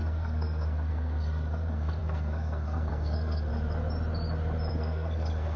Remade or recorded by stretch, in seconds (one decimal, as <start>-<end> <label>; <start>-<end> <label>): 0.0-3.5 remade; 3.5-4.7 recorded; 4.7-5.6 remade